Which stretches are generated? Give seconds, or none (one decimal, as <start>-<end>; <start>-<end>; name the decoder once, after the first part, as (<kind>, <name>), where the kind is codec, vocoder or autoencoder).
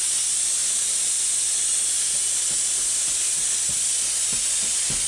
none